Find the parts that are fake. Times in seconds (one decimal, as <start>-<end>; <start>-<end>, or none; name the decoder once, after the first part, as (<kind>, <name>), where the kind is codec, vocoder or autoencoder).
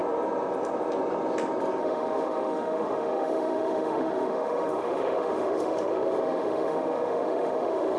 1.8-8.0 (autoencoder, DAC-VAE)